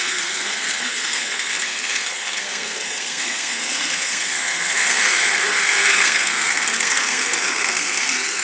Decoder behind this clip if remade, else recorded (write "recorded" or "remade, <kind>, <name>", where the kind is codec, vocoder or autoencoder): remade, codec, SNAC